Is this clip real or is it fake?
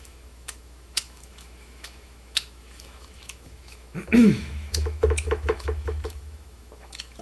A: fake